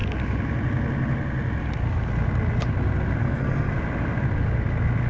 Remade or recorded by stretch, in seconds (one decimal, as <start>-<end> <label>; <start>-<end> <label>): 0.0-3.2 recorded; 3.2-3.7 remade; 3.7-5.1 recorded